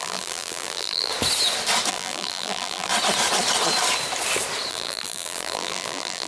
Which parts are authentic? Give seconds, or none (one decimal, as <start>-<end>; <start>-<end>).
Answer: 1.1-1.9; 2.9-4.7